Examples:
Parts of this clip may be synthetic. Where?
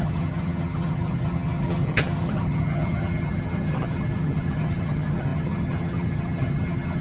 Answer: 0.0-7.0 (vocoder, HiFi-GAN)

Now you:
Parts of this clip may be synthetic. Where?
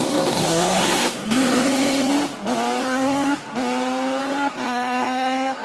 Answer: 0.0-2.1 (codec, SNAC); 2.8-3.5; 4.2-5.6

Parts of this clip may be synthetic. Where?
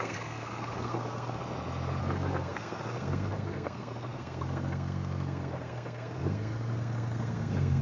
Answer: 0.0-1.4 (codec, SNAC); 2.0-7.8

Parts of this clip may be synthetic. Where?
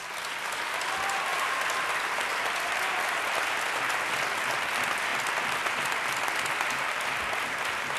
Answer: none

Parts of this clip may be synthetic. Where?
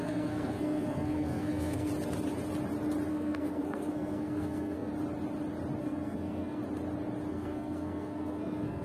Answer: 0.0-1.9 (codec, SNAC); 3.1-4.9; 5.8-6.6; 7.3-8.8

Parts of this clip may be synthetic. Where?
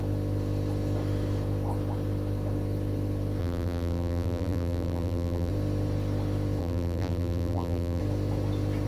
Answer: 3.4-5.5 (vocoder, BigVGAN v2); 6.6-8.0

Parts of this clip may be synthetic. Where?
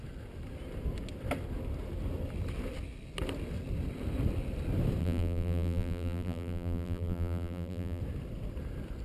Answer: 5.0-8.0 (vocoder, BigVGAN v2)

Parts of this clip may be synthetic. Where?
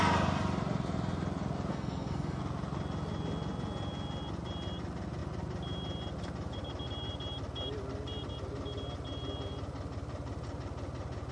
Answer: 1.7-2.4 (codec, SNAC)